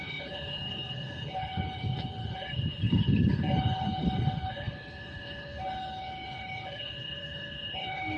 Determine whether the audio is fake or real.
fake